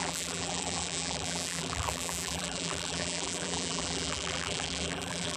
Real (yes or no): no